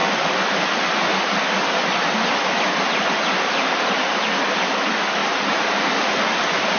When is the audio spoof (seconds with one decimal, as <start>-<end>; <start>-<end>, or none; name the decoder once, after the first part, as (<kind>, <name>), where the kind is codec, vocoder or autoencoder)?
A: 0.0-3.4 (vocoder, BigVGAN v2); 5.2-6.1